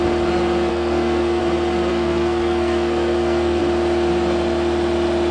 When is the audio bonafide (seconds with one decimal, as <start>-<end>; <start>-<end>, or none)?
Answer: 0.0-0.7; 1.4-1.9; 3.6-5.3